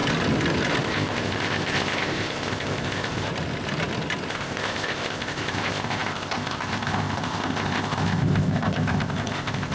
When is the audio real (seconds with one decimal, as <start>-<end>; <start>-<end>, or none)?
0.0-0.8; 3.3-4.3